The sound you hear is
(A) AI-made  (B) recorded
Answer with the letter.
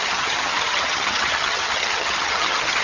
A